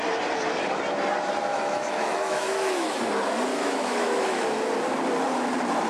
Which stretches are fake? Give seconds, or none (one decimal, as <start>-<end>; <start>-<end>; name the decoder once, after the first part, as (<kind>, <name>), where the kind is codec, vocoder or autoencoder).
1.5-3.0 (autoencoder, DAC-VAE); 3.5-4.4